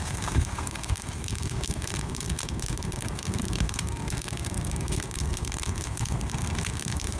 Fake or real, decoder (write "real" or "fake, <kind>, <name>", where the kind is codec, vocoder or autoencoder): fake, codec, SNAC